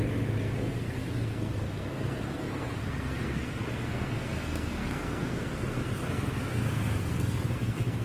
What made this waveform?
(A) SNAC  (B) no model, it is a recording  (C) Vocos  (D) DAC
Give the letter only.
A